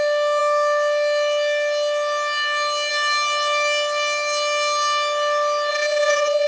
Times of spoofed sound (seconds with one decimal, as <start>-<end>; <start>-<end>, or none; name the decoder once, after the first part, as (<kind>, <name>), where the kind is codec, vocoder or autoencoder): 5.7-6.5 (vocoder, Vocos)